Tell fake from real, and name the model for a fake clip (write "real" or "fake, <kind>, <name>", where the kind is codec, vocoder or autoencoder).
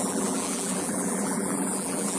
fake, vocoder, BigVGAN v2